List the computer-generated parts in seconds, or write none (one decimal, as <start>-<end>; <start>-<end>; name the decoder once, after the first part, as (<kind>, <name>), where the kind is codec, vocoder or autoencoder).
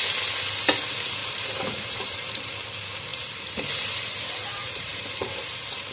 1.2-2.5 (vocoder, BigVGAN v2); 3.1-5.3